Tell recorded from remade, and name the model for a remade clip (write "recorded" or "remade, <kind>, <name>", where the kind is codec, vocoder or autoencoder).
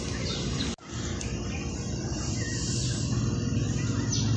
recorded